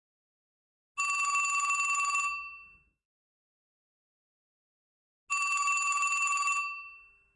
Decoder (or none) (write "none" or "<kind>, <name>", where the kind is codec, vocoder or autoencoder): none